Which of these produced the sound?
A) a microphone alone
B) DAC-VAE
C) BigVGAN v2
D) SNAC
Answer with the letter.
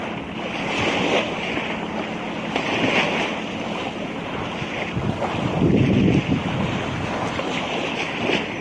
A